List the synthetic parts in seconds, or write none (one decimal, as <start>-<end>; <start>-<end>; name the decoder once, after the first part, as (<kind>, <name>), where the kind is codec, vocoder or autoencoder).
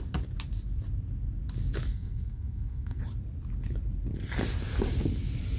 1.9-3.0 (codec, SNAC)